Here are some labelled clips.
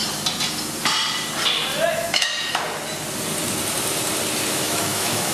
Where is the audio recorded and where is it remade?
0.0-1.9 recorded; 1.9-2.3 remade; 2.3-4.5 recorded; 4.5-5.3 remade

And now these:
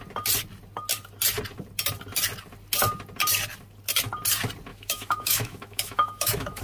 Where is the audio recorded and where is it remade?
0.0-4.7 recorded; 4.7-6.6 remade

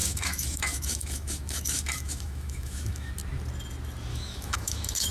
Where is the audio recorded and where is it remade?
0.0-3.1 remade; 3.1-4.1 recorded; 4.1-5.1 remade

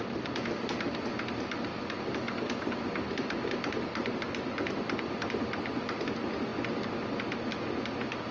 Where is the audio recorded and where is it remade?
0.0-8.3 recorded

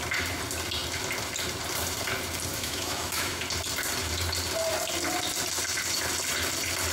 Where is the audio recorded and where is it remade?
0.0-2.5 recorded; 2.5-3.4 remade; 3.4-6.9 recorded